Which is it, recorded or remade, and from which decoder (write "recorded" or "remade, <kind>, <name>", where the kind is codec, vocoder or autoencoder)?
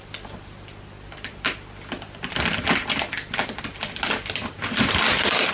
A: recorded